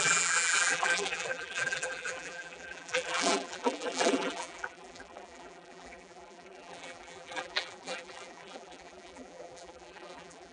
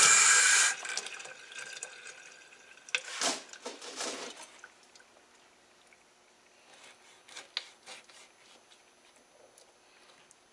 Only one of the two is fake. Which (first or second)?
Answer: first